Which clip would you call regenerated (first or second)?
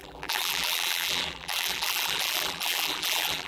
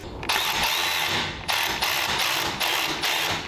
first